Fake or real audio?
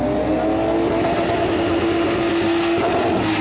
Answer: real